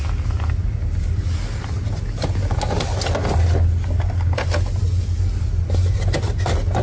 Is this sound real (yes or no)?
yes